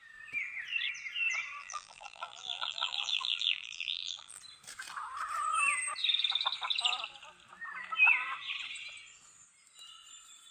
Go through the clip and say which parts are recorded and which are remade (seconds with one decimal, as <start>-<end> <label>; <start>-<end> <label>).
0.0-1.6 recorded; 1.6-4.4 remade; 4.4-10.5 recorded